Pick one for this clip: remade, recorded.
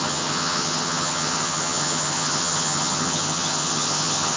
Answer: remade